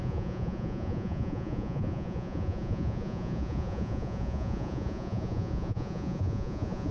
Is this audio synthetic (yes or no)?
yes